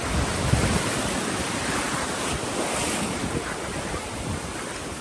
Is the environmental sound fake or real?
real